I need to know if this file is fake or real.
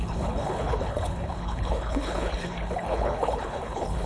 fake